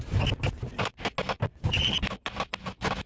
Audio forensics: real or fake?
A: real